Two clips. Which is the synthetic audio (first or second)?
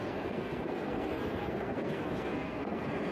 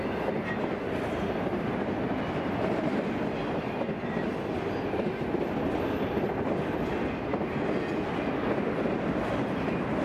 first